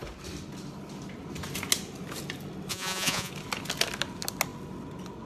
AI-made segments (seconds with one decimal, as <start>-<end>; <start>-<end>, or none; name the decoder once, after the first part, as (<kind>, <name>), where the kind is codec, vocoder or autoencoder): 2.7-3.3 (vocoder, Vocos)